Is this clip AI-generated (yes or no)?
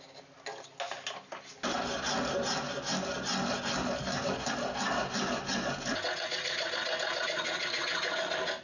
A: no